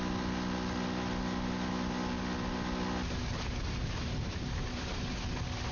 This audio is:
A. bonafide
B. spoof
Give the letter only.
A